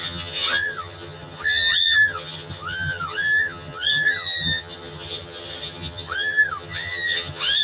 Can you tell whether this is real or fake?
fake